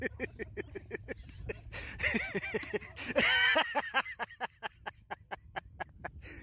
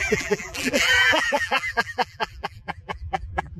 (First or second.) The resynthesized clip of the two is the second